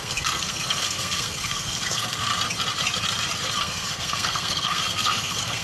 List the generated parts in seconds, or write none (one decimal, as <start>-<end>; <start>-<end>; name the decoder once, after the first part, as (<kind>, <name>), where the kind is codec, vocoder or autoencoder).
0.0-2.3 (codec, SNAC); 3.6-5.6